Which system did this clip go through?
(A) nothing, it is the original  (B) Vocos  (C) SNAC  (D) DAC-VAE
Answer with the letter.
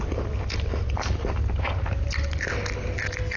A